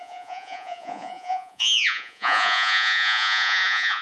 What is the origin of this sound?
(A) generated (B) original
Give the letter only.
A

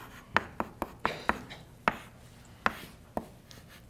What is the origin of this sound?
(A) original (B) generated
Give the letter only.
A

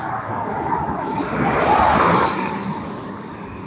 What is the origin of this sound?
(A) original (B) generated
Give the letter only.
B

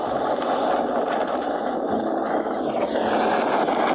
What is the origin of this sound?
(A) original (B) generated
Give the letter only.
A